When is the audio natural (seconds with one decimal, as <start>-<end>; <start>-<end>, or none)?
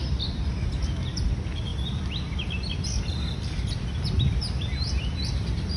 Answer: 0.0-5.8